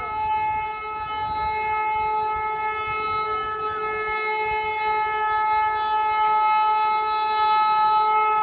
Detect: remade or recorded recorded